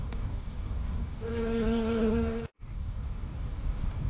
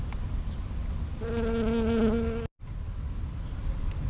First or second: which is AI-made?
first